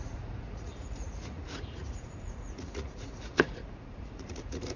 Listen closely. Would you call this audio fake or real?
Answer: fake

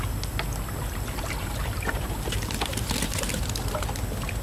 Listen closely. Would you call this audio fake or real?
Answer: real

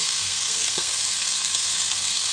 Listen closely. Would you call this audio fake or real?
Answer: fake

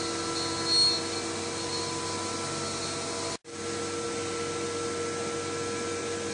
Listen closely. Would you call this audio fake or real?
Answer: real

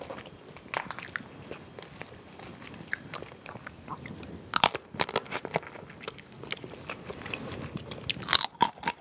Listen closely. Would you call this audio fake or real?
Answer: real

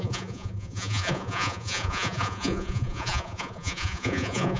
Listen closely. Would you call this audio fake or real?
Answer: fake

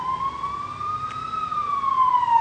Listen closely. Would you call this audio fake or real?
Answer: real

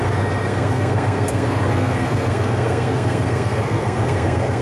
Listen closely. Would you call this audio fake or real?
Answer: fake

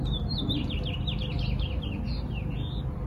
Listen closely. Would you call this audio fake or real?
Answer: real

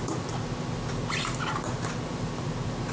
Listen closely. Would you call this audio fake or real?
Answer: real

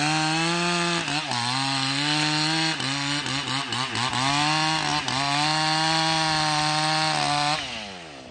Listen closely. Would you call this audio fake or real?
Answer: real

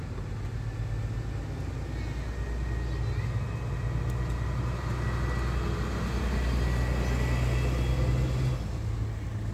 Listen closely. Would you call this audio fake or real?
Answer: real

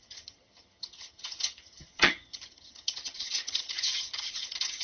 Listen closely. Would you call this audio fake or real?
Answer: fake